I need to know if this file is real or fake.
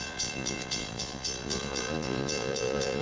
fake